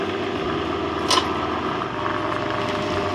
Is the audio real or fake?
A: real